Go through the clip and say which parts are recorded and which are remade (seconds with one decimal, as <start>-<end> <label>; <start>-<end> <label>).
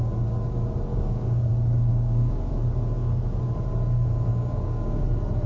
0.0-0.9 recorded; 0.9-1.5 remade; 1.5-1.9 recorded; 1.9-2.5 remade; 2.5-4.3 recorded; 4.3-5.0 remade; 5.0-5.5 recorded